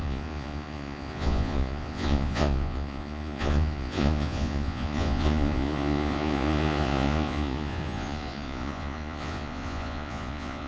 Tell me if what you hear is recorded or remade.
remade